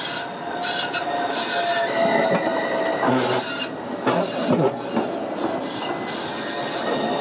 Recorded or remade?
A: recorded